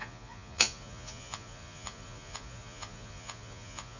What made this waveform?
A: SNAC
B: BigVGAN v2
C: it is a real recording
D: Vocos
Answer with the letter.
D